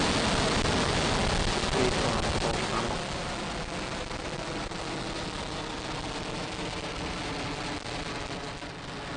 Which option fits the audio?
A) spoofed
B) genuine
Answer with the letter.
B